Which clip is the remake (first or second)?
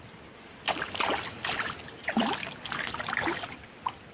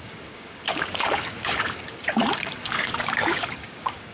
second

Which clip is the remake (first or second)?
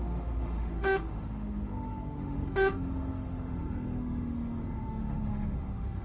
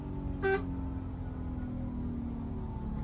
first